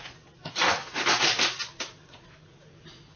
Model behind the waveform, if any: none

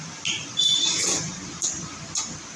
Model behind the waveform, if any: none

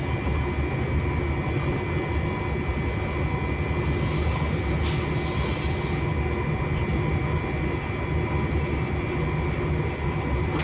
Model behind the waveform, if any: none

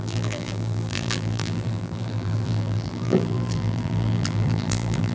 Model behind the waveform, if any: vocoder, BigVGAN v2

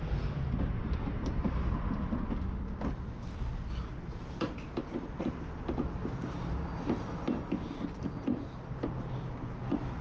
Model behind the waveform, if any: none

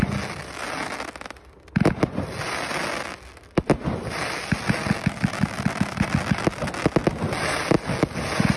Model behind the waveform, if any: none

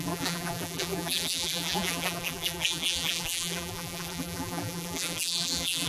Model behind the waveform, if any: vocoder, BigVGAN v2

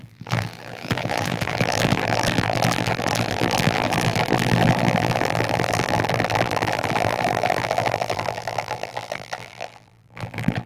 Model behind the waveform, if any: vocoder, BigVGAN v2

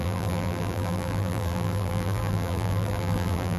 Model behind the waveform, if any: vocoder, BigVGAN v2